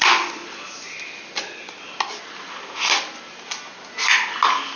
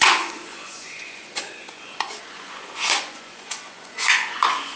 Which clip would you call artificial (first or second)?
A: second